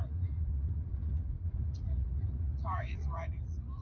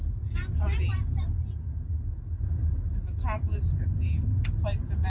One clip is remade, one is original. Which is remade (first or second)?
first